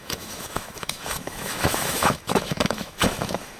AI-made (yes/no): yes